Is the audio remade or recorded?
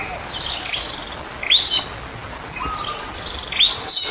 recorded